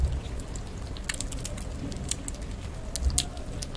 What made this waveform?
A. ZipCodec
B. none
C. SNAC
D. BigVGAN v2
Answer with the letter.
B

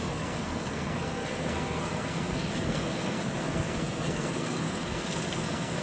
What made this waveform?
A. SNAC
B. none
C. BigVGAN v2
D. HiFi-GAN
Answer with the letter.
A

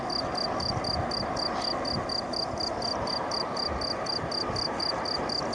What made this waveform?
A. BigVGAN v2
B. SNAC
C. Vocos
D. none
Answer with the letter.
D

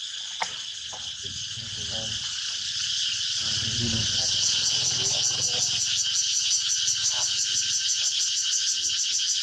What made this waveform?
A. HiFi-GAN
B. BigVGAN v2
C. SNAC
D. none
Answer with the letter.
D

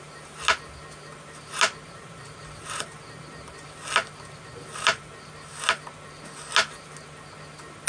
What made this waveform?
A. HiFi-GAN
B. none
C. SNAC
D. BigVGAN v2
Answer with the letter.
B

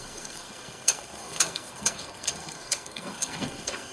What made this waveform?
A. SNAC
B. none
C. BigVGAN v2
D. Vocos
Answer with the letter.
A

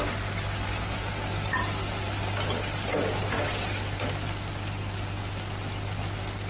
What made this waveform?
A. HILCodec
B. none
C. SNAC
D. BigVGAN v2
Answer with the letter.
B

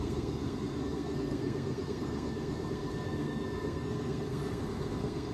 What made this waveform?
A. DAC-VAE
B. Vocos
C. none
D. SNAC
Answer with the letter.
D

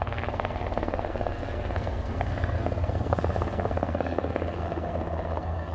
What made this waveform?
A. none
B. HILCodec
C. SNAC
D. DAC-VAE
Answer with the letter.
C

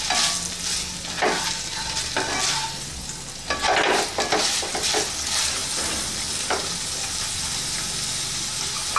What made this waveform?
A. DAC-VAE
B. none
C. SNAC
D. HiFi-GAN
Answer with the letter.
B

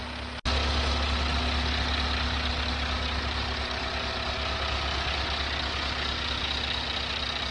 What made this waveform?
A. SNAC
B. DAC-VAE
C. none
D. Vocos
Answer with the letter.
C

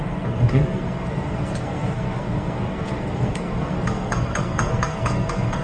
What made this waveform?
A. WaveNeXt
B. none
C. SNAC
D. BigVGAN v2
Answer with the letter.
C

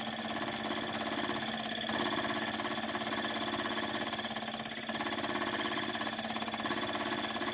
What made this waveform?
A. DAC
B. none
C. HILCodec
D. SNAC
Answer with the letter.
B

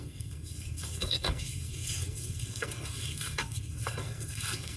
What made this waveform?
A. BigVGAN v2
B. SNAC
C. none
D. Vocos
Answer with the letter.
B